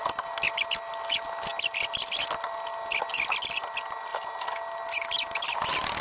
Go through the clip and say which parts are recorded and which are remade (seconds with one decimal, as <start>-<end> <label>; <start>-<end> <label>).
0.0-6.0 recorded

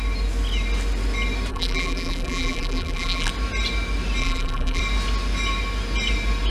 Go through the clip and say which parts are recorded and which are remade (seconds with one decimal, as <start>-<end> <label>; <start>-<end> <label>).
0.0-1.5 recorded; 1.5-3.3 remade; 3.3-4.2 recorded; 4.2-4.8 remade; 4.8-6.5 recorded

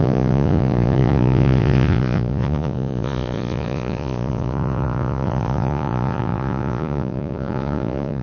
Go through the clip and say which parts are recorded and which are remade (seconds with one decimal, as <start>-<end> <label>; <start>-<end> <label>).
0.0-8.2 remade

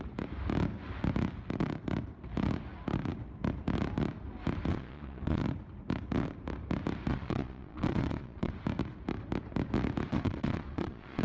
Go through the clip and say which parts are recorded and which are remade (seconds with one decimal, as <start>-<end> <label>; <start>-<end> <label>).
0.0-4.7 recorded; 4.7-5.4 remade; 5.4-7.1 recorded; 7.1-8.5 remade; 8.5-10.1 recorded; 10.1-11.2 remade